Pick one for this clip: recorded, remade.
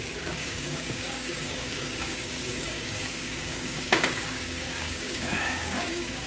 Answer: remade